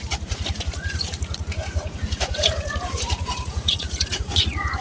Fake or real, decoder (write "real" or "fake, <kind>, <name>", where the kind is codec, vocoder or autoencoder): fake, vocoder, Vocos